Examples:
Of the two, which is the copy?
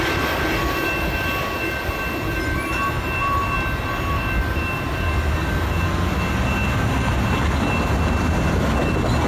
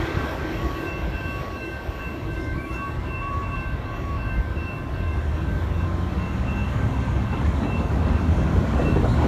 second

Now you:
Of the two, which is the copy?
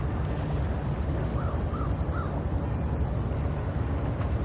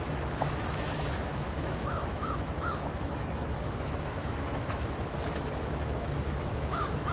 second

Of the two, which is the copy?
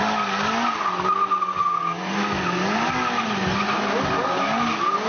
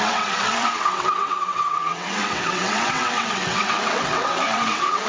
second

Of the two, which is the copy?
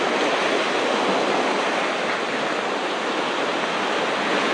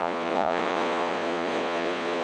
second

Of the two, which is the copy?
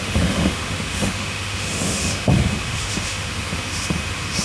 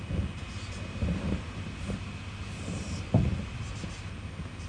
first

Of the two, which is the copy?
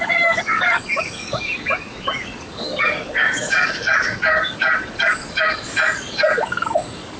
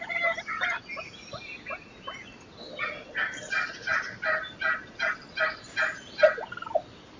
first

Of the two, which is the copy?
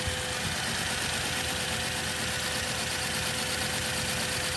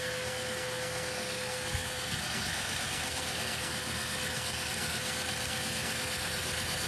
second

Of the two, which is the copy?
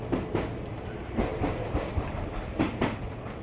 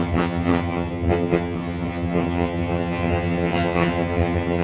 second